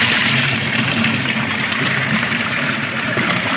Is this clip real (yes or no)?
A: no